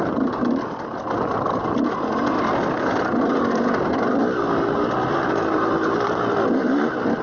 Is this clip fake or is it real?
real